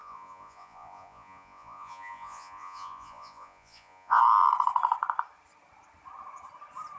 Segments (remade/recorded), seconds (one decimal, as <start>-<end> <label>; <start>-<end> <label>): 0.0-4.2 remade; 4.2-7.0 recorded